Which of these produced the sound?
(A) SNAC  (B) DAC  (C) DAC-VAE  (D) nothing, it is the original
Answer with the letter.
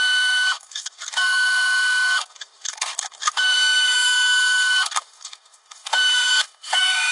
C